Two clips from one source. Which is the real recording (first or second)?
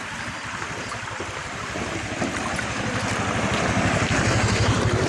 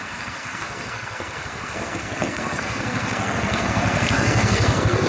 first